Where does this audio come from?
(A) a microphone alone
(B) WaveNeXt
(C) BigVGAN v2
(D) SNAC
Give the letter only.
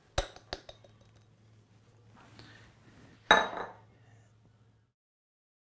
A